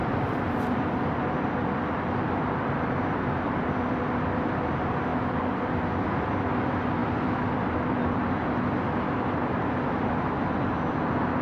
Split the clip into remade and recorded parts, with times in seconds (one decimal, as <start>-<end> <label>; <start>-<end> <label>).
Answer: 0.0-4.6 remade; 4.6-5.1 recorded; 5.1-5.8 remade; 5.8-7.0 recorded; 7.0-8.7 remade; 8.7-11.4 recorded